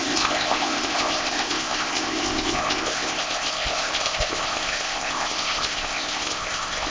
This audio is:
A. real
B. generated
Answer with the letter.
B